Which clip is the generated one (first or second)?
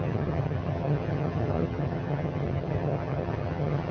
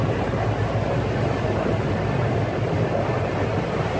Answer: first